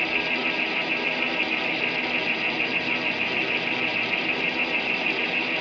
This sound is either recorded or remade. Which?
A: recorded